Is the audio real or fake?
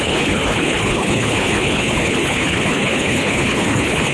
fake